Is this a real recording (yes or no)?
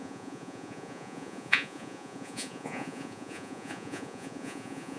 no